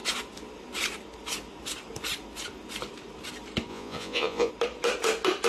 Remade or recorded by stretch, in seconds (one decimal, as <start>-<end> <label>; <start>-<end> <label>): 0.0-3.7 recorded; 3.7-4.5 remade; 4.5-5.5 recorded